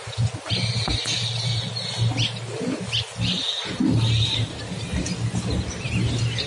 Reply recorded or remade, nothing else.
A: recorded